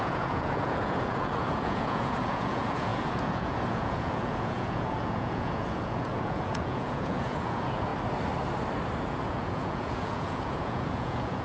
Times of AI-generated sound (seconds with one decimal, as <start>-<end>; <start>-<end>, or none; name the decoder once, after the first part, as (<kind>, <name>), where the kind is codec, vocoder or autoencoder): 0.0-7.9 (vocoder, Vocos); 9.0-11.4